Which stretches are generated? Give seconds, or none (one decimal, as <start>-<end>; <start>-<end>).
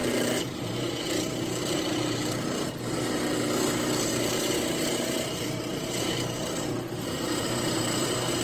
0.0-8.4